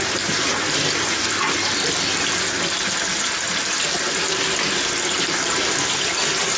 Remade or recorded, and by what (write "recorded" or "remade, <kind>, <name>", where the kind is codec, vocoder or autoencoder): recorded